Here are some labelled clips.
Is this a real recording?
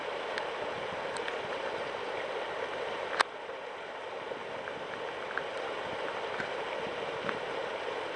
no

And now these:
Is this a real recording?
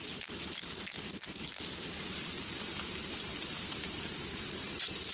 no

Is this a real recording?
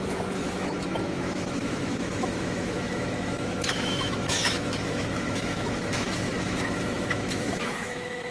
no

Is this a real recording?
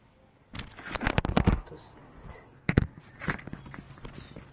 yes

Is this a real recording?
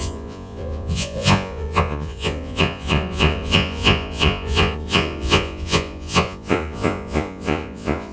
no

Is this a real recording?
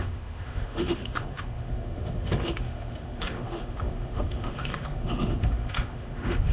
no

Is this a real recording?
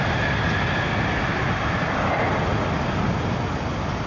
yes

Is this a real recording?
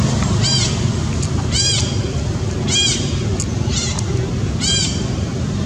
yes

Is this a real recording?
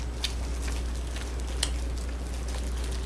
yes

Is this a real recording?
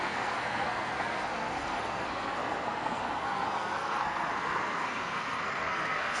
no